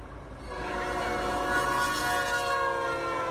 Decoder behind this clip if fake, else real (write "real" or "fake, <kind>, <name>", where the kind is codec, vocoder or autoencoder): real